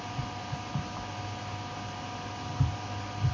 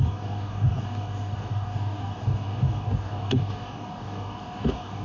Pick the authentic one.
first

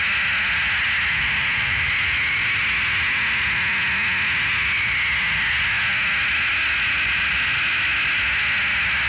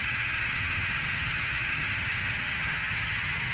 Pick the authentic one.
first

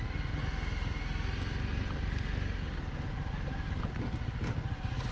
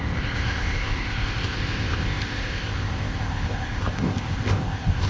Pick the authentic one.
first